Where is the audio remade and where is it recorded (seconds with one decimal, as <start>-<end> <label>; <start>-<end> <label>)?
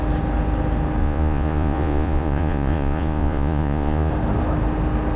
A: 0.0-1.0 recorded; 1.0-4.1 remade; 4.1-5.2 recorded